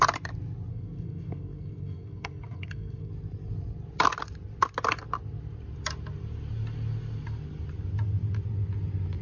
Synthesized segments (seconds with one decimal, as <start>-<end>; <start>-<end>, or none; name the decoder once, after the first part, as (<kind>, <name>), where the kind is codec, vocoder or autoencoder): 0.7-3.1 (codec, SNAC)